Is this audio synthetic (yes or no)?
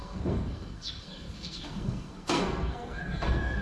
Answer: yes